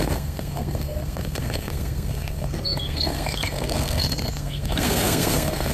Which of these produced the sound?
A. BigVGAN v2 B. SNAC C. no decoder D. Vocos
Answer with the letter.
B